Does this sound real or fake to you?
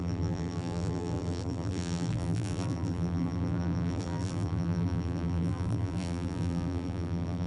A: fake